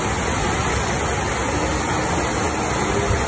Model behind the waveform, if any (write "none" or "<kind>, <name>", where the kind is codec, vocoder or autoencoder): none